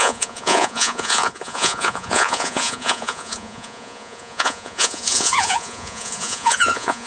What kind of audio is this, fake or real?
fake